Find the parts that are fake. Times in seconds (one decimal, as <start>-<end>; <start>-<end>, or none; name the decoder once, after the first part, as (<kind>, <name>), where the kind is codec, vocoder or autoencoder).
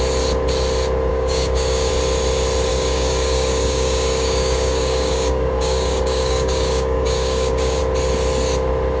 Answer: 1.1-1.9 (codec, DAC); 2.7-7.8